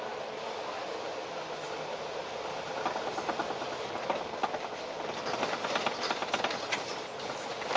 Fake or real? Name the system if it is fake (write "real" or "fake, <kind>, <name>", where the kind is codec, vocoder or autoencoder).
real